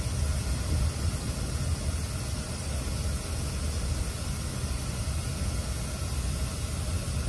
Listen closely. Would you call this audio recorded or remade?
recorded